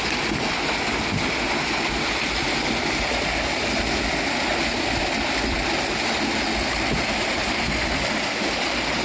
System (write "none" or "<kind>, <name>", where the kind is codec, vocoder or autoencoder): none